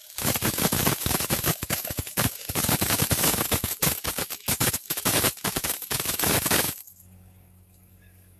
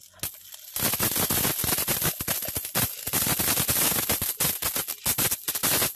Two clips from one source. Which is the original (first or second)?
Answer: second